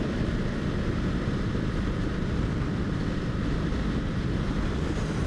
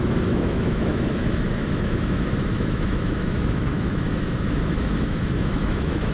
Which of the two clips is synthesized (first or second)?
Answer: second